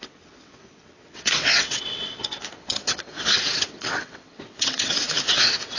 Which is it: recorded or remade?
remade